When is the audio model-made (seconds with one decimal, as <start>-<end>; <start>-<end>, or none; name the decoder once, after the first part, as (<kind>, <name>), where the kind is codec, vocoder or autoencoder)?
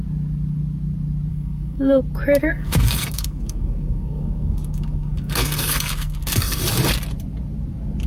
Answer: 1.3-2.0 (codec, SNAC); 2.4-6.6